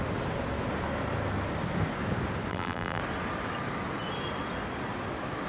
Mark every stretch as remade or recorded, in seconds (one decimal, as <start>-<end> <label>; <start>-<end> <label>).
0.0-2.5 recorded; 2.5-3.0 remade; 3.0-5.5 recorded